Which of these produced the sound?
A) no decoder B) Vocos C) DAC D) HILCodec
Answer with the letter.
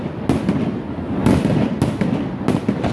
A